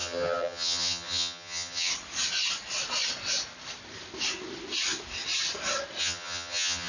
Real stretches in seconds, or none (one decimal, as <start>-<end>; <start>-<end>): 1.9-6.0